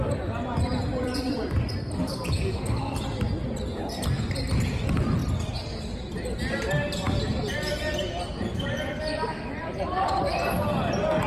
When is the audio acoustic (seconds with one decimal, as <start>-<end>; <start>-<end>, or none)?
0.0-0.7; 1.6-11.3